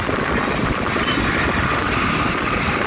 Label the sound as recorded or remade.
recorded